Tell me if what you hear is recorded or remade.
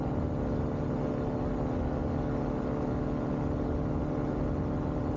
recorded